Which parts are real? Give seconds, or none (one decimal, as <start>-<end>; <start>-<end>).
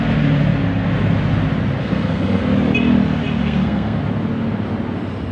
0.0-1.8; 2.4-3.4; 4.0-5.3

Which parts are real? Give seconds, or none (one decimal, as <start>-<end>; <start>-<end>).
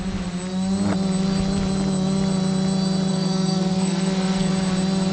0.0-3.1; 4.5-5.1